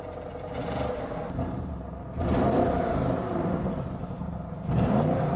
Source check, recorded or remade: remade